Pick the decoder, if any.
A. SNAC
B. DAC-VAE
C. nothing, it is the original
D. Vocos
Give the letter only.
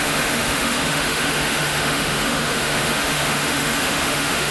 B